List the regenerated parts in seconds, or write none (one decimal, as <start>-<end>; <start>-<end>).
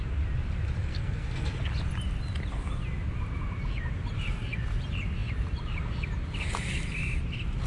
0.8-1.6